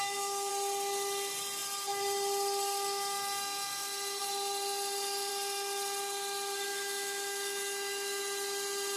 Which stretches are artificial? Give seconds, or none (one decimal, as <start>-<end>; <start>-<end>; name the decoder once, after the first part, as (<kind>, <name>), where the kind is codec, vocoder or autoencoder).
0.0-0.5 (autoencoder, DAC-VAE); 6.7-8.2